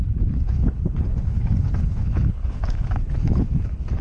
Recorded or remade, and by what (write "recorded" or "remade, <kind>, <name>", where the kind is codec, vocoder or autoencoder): remade, codec, HILCodec